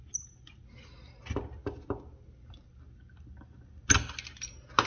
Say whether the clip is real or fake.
real